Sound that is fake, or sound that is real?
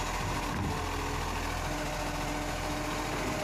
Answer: real